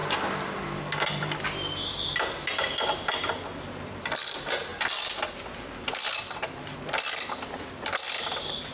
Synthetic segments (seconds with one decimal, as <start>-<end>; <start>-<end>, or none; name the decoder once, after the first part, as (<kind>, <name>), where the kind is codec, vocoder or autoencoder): 1.1-2.1 (vocoder, BigVGAN v2); 3.8-8.7